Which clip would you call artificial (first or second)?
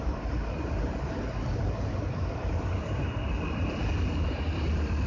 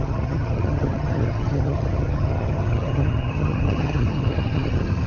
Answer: second